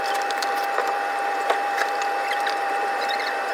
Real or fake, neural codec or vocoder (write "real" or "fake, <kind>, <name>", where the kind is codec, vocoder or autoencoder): fake, vocoder, BigVGAN v2